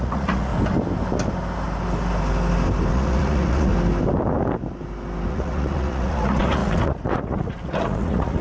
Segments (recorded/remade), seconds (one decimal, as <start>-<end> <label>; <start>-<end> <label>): 0.0-0.5 remade; 0.5-2.9 recorded; 2.9-3.7 remade; 3.7-5.3 recorded; 5.3-8.4 remade